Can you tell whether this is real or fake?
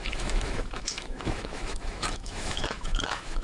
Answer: fake